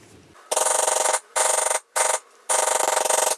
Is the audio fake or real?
real